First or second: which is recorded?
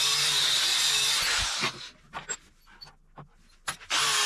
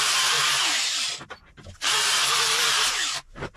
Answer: first